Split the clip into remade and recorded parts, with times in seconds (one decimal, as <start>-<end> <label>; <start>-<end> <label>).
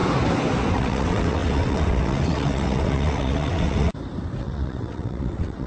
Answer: 0.0-0.7 recorded; 0.7-3.9 remade; 3.9-4.4 recorded; 4.4-5.7 remade